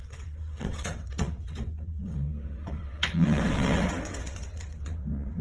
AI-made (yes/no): yes